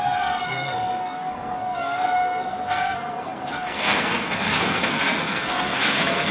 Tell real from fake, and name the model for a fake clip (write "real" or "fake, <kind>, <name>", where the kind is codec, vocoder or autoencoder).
fake, codec, SNAC